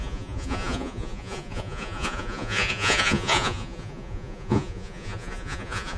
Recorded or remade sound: remade